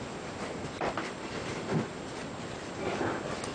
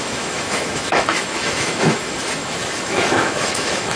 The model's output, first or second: second